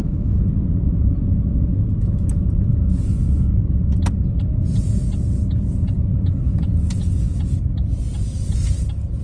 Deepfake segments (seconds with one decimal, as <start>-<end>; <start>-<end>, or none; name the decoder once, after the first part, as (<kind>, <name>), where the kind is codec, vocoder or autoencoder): 0.0-3.6 (vocoder, Vocos); 4.6-7.3